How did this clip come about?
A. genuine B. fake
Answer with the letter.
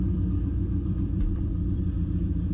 B